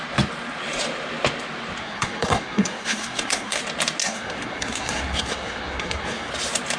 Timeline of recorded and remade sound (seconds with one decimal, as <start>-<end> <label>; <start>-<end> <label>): 0.0-1.8 recorded; 1.8-3.6 remade; 3.6-4.0 recorded; 4.0-6.3 remade; 6.3-6.8 recorded